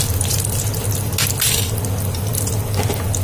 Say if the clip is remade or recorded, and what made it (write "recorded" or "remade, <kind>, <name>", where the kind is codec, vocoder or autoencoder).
recorded